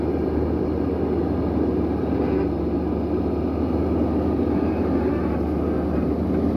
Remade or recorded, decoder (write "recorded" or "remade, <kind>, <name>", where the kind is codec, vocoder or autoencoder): recorded